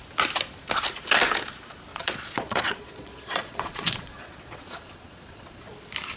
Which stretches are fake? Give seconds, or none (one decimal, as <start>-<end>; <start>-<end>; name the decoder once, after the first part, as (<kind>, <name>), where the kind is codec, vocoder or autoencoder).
1.9-5.6 (vocoder, Vocos)